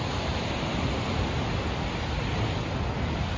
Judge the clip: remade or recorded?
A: recorded